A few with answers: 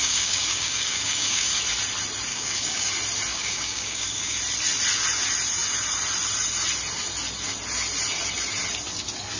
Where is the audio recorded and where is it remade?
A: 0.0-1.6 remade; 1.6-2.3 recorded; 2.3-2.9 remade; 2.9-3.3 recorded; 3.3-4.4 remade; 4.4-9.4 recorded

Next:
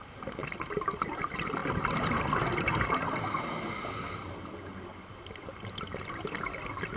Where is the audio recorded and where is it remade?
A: 0.0-7.0 recorded

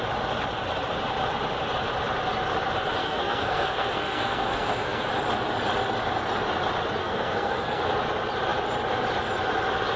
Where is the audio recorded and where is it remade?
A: 0.0-3.0 recorded; 3.0-5.1 remade; 5.1-7.0 recorded; 7.0-7.8 remade; 7.8-10.0 recorded

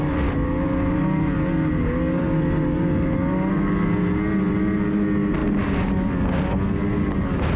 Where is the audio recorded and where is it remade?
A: 0.0-7.6 recorded